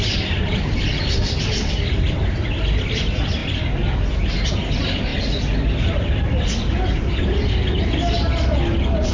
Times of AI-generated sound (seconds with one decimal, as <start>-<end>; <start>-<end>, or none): none